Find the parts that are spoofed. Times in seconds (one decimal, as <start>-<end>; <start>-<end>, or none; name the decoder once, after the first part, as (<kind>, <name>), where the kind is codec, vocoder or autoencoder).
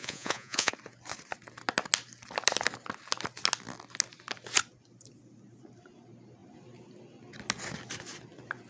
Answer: 0.0-0.7 (vocoder, Vocos)